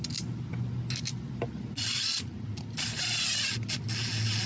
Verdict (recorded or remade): recorded